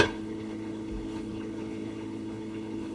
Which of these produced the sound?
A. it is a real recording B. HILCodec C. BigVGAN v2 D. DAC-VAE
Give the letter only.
B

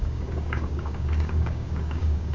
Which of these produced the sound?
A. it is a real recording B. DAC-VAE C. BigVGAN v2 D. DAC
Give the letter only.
D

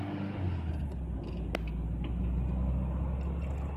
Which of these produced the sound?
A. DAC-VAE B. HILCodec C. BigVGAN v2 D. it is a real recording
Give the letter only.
D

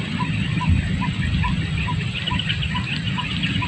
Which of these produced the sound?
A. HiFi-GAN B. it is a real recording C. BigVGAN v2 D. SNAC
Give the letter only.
B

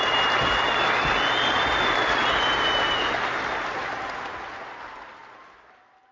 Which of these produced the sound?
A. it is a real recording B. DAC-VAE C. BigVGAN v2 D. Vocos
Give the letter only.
A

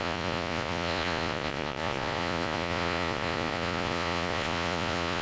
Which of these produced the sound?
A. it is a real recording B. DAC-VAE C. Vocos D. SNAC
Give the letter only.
C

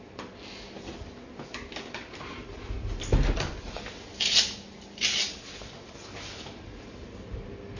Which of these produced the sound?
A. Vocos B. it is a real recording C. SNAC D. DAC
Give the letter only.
B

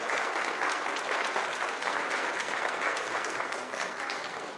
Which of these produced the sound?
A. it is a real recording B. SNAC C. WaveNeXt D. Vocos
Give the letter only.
B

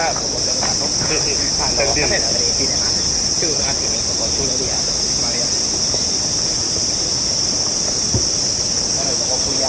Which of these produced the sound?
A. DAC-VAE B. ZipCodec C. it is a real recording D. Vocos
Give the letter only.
C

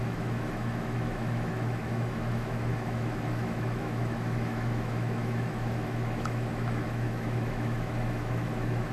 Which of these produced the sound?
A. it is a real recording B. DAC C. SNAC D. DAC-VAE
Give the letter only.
D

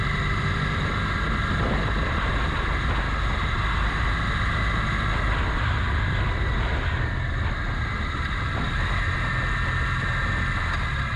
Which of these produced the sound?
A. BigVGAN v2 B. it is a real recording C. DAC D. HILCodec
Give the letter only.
B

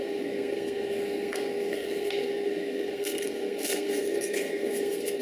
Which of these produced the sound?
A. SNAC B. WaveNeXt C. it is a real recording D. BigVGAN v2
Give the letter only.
A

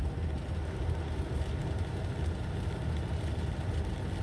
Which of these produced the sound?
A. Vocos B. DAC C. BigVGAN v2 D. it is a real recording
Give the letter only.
D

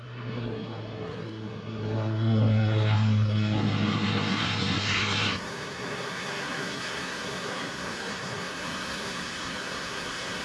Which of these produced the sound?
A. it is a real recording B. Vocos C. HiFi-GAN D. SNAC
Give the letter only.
D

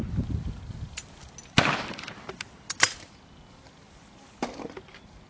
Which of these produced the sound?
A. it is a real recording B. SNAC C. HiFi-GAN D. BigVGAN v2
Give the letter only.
A